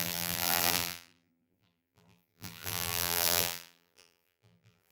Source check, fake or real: fake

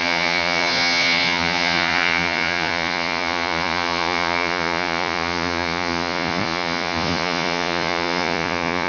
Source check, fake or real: fake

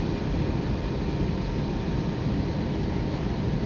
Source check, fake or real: real